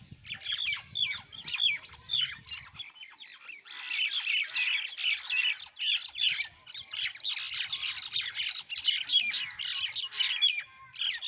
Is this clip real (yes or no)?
yes